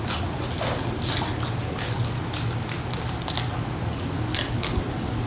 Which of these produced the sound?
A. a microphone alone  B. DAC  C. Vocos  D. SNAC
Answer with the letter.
A